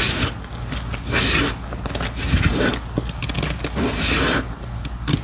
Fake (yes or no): no